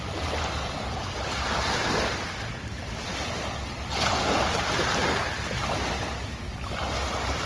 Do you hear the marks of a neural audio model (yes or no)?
no